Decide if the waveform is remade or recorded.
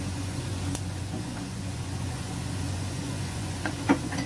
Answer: remade